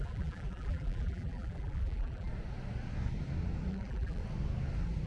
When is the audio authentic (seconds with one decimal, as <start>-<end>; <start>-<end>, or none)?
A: 2.3-3.7; 4.2-5.1